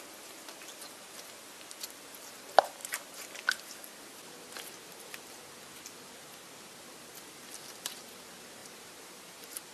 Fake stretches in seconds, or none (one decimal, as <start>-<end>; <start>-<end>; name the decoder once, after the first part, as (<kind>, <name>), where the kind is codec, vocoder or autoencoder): 8.6-9.7 (vocoder, BigVGAN v2)